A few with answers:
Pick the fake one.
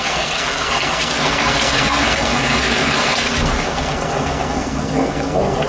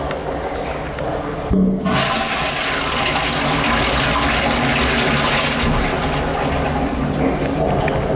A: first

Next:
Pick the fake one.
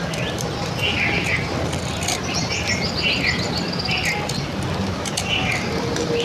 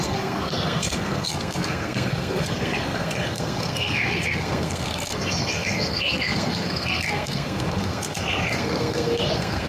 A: second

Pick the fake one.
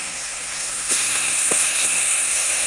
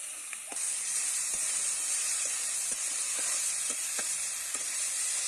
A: first